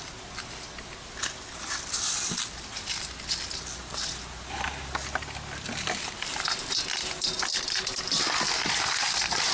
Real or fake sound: real